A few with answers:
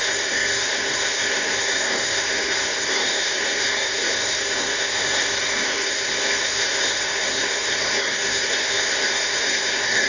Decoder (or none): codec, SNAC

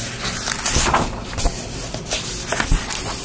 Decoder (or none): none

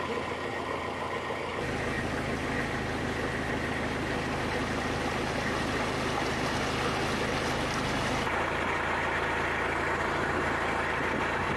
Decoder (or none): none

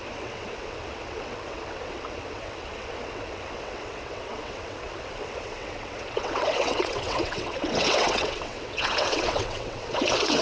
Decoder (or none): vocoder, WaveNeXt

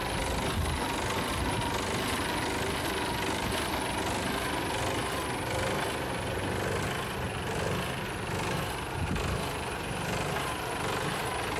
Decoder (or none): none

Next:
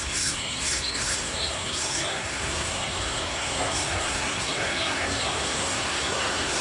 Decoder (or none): codec, SNAC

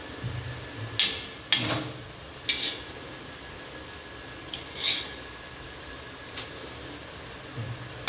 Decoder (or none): none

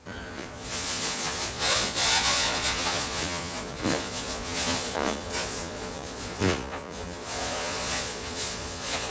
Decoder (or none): vocoder, Vocos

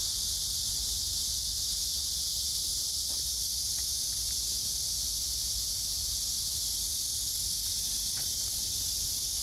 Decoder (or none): none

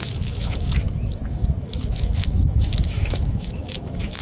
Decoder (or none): autoencoder, DAC-VAE